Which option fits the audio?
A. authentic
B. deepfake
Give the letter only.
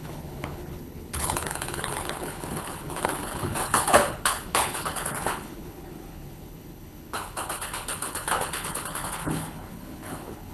B